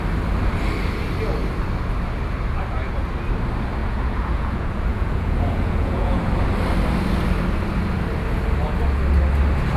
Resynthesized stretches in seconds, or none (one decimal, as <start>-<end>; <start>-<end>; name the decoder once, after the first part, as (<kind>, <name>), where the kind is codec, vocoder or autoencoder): 3.8-6.2 (vocoder, Vocos)